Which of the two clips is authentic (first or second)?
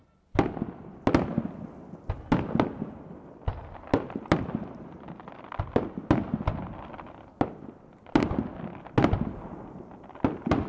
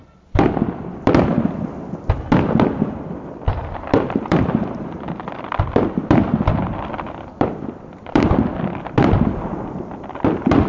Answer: first